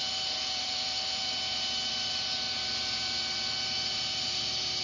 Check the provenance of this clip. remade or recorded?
remade